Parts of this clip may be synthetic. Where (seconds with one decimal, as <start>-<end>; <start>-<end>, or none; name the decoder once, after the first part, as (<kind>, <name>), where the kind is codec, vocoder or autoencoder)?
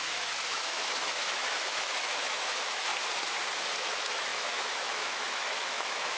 0.0-2.9 (autoencoder, DAC-VAE); 3.8-6.2